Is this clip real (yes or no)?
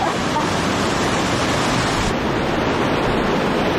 yes